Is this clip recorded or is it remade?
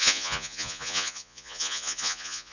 remade